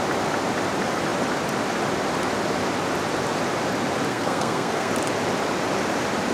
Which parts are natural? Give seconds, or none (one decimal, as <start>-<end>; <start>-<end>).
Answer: 0.0-4.1; 4.9-6.3